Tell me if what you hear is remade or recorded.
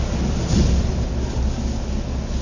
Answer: recorded